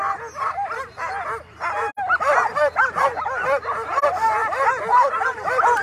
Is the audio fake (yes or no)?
no